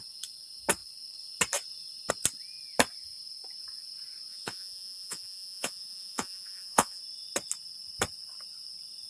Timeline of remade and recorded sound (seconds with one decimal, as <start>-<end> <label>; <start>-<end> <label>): 0.0-4.3 recorded; 4.3-7.0 remade; 7.0-9.1 recorded